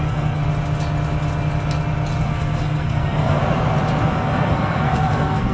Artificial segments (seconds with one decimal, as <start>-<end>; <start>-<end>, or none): 0.0-0.4; 2.2-3.4; 4.0-5.5